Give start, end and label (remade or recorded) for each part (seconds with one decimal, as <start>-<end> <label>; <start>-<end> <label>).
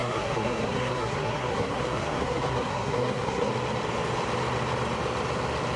0.0-3.5 remade; 3.5-5.8 recorded